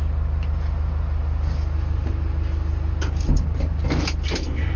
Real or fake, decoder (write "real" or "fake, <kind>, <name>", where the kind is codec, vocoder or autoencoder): real